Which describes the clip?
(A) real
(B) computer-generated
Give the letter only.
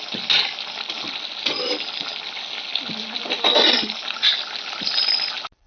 A